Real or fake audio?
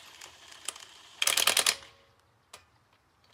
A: real